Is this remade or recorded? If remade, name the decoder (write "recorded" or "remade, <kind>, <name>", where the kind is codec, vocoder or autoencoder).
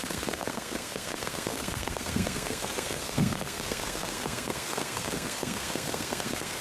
remade, codec, SNAC